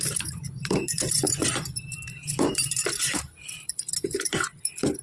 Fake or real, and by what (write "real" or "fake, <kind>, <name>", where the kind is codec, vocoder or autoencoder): fake, vocoder, BigVGAN v2